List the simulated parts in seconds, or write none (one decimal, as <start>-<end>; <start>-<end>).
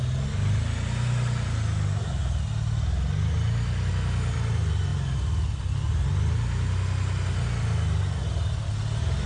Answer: none